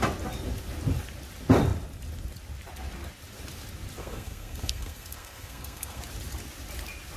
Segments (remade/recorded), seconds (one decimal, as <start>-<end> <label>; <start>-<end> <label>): 0.0-4.0 recorded; 4.0-6.0 remade; 6.0-7.2 recorded